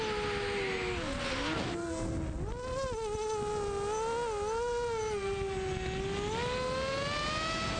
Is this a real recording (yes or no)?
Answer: yes